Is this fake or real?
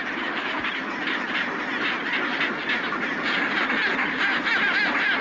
real